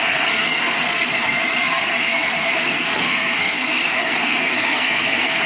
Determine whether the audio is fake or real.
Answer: fake